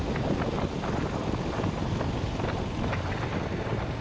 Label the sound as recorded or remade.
recorded